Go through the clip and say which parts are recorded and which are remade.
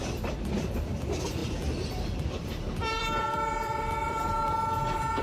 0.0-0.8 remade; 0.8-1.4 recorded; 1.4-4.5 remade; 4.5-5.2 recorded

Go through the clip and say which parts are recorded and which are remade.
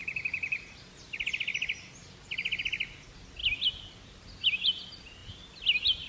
0.0-1.0 remade; 1.0-2.0 recorded; 2.0-2.6 remade; 2.6-6.1 recorded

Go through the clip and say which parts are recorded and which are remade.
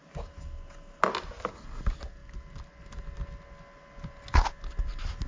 0.0-5.3 recorded